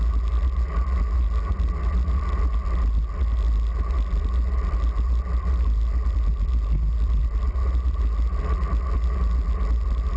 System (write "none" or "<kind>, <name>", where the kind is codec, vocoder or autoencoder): none